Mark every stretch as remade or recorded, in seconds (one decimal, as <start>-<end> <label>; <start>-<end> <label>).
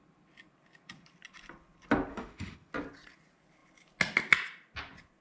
0.0-2.1 recorded; 2.1-2.7 remade; 2.7-5.2 recorded